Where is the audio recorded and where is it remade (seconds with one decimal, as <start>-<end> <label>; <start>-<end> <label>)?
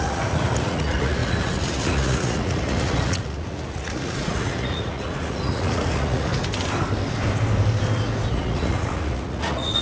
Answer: 0.0-6.3 remade; 6.3-8.3 recorded; 8.3-9.8 remade